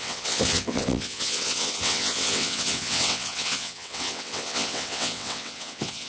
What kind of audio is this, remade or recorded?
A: remade